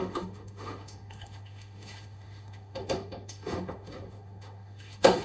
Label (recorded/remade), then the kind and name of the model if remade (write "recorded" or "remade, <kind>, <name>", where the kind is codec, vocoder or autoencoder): remade, autoencoder, DAC-VAE